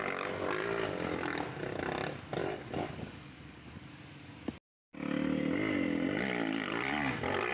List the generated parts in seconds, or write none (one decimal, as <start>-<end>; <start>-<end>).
2.4-4.0